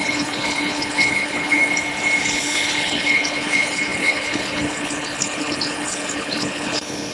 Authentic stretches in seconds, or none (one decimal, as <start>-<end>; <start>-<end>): 1.6-2.2